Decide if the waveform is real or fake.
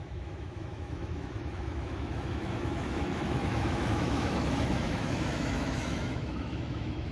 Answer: fake